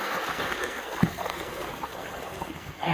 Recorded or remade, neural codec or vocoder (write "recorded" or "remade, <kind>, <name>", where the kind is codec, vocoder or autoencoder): remade, codec, SNAC